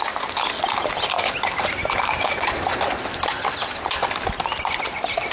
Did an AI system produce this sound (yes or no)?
no